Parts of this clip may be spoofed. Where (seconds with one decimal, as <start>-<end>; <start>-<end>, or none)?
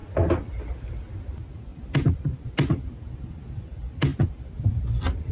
none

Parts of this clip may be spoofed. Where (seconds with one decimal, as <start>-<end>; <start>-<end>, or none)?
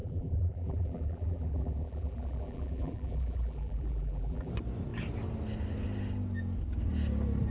0.0-4.5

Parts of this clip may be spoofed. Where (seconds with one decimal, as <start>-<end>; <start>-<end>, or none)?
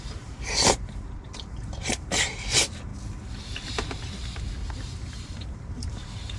0.0-2.9; 4.7-6.4